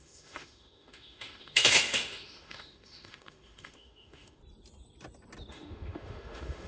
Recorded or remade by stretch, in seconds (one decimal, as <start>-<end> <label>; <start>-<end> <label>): 0.0-4.4 remade; 4.4-5.5 recorded; 5.5-6.7 remade